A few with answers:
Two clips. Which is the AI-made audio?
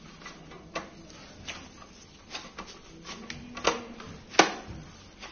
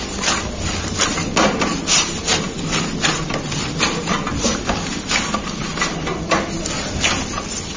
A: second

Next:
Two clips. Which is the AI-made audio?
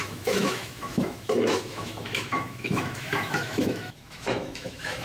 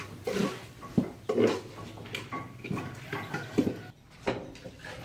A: first